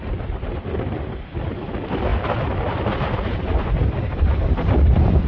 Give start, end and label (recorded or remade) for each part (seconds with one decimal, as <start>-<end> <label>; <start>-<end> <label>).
0.0-2.1 remade; 2.1-5.3 recorded